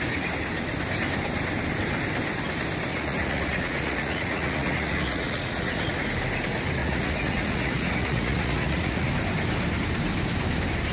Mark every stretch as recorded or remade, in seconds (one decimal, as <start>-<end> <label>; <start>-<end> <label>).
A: 0.0-2.9 recorded; 2.9-5.9 remade; 5.9-6.8 recorded; 6.8-9.1 remade; 9.1-10.9 recorded